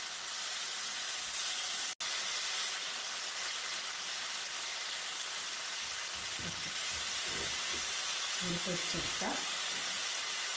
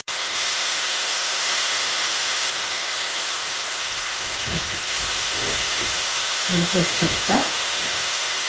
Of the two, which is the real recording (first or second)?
first